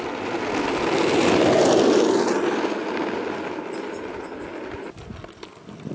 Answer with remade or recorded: recorded